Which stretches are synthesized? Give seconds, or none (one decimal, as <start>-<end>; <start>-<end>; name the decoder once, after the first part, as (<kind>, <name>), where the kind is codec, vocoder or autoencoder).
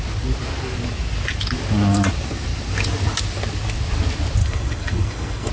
4.4-5.5 (codec, SNAC)